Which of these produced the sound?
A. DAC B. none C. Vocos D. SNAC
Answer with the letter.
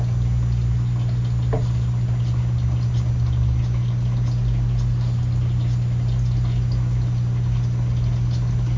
B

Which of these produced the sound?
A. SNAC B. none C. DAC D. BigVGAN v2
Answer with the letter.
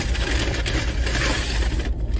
B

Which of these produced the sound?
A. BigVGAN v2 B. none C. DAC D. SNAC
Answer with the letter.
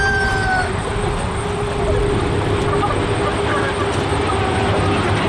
B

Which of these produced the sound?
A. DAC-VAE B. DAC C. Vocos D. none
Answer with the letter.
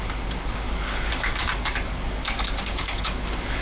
B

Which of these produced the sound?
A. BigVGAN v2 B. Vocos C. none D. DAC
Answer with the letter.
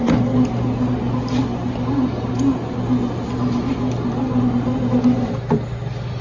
C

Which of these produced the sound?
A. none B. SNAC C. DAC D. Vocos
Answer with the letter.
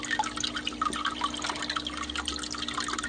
A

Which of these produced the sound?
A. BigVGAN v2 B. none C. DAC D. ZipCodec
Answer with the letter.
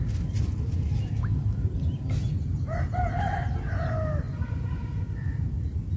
B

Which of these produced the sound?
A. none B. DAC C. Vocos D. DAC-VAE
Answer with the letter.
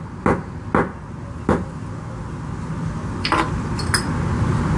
A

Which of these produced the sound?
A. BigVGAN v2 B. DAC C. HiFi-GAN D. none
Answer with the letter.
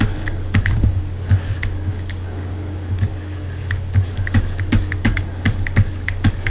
B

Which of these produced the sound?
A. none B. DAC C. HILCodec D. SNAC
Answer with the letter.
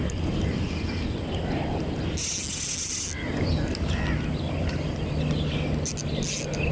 A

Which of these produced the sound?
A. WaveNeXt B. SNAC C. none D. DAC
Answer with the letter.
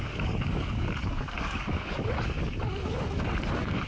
D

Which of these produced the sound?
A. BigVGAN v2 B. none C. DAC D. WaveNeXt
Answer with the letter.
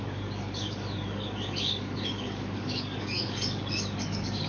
C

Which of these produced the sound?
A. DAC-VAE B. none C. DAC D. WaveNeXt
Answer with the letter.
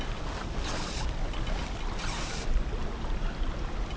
B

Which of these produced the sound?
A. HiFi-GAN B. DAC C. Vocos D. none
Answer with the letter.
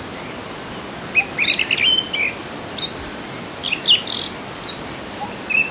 D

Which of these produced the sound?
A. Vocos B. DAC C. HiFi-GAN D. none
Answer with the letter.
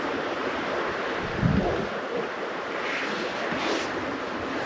D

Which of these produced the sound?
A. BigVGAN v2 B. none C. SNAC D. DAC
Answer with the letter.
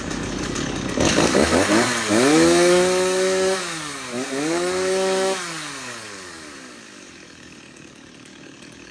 D